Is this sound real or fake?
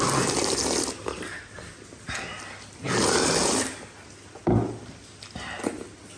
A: real